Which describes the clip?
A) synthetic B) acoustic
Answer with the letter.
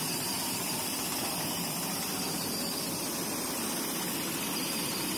A